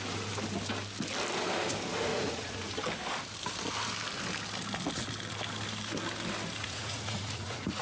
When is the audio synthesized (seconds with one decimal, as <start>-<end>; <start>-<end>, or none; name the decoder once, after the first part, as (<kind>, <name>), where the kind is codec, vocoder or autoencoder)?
2.1-2.7 (vocoder, Vocos); 6.6-7.8